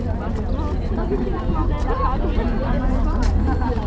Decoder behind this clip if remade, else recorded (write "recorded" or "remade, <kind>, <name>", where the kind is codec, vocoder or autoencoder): recorded